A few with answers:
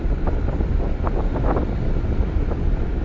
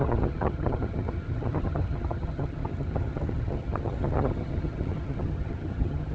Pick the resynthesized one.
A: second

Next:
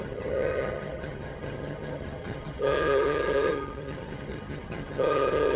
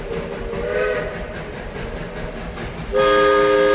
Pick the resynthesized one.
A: first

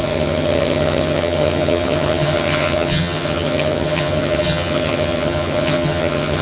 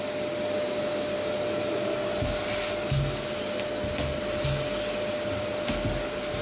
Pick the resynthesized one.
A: first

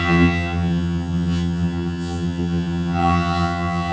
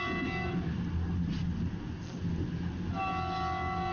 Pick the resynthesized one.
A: first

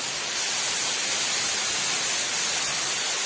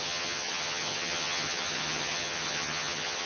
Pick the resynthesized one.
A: second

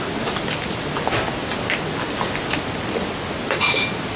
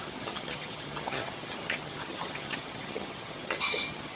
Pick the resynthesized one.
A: second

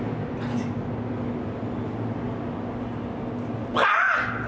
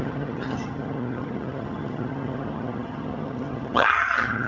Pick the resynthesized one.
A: second